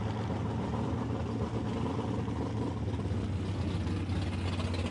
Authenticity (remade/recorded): recorded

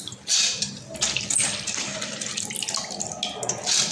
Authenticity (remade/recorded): recorded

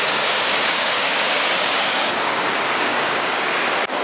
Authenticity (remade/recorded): remade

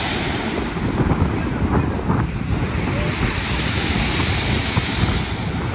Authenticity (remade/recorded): recorded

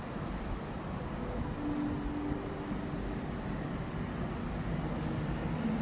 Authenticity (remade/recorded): recorded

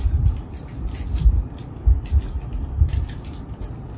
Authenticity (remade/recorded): recorded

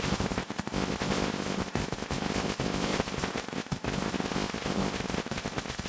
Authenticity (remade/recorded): remade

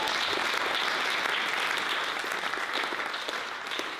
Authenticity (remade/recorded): recorded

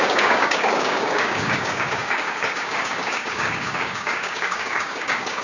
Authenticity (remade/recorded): remade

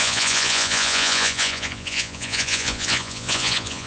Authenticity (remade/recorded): remade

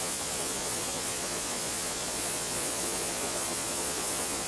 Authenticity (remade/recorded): remade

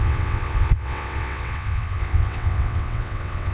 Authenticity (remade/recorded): remade